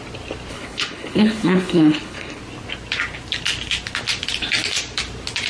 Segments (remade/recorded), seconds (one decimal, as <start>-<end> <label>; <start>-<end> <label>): 0.0-0.5 recorded; 0.5-2.4 remade; 2.4-5.5 recorded